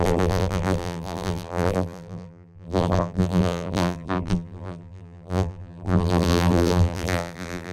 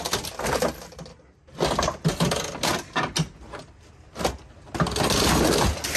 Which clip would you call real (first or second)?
second